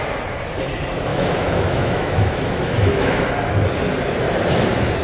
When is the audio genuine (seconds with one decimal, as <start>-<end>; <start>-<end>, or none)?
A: 0.0-1.1; 3.2-5.0